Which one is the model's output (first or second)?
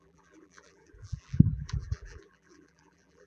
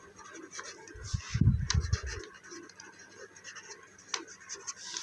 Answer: first